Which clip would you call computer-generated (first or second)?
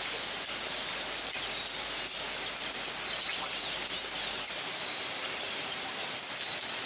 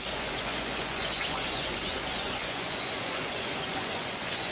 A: second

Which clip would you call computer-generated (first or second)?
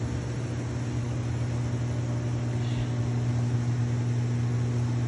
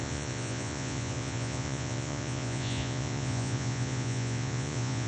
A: second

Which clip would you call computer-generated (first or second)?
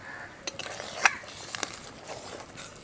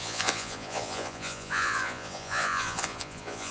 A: second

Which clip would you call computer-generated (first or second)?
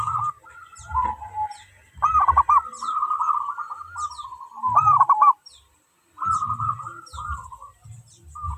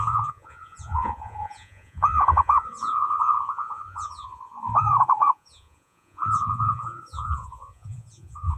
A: second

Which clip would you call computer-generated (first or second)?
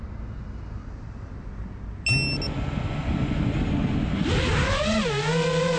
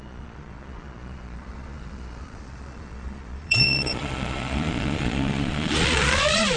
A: second